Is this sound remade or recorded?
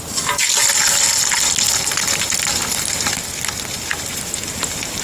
recorded